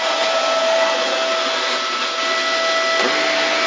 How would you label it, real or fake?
real